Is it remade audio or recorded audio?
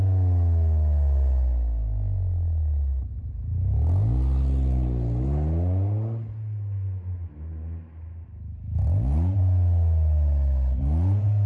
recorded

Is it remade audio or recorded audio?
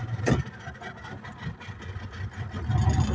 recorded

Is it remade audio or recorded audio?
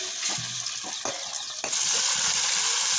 recorded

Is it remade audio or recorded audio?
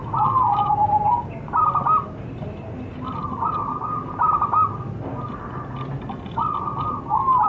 recorded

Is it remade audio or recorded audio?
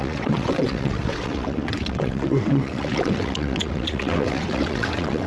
remade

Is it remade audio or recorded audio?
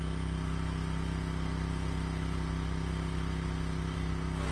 recorded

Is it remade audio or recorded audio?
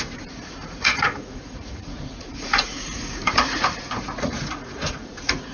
remade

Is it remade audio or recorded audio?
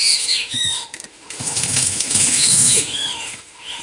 remade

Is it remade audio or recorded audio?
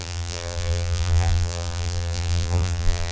remade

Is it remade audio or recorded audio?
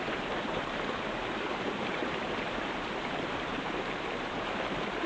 remade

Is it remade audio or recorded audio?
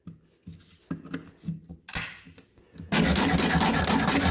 recorded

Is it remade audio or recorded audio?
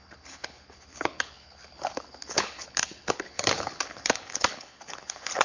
remade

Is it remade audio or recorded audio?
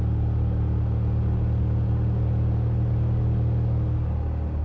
recorded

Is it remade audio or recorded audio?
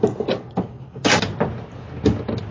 recorded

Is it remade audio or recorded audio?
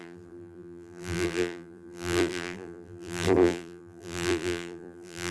remade